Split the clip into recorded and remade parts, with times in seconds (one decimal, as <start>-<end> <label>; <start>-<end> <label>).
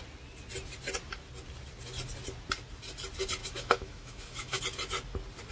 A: 0.0-3.4 recorded; 3.4-4.6 remade; 4.6-5.5 recorded